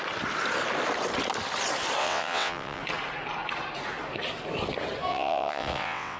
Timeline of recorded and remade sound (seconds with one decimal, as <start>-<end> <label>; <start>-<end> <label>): 0.0-2.0 recorded; 2.0-2.8 remade; 2.8-5.1 recorded; 5.1-6.2 remade